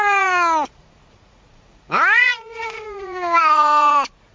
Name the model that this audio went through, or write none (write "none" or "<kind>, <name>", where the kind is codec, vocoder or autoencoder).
vocoder, Vocos